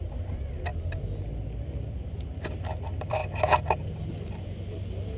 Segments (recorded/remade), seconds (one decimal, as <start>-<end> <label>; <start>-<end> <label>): 0.0-5.2 recorded